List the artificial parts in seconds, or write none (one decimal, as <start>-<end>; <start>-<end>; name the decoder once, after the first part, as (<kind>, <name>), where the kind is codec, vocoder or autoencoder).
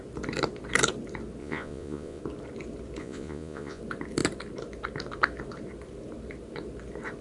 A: 1.4-2.2 (vocoder, Vocos); 3.0-3.8